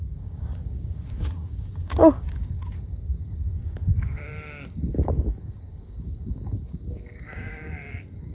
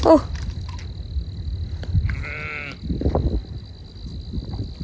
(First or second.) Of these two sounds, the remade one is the first